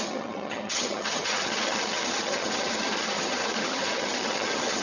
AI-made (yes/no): yes